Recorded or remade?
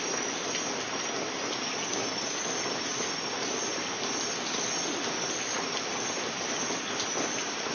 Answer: recorded